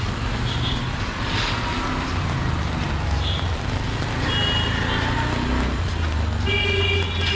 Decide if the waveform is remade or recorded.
recorded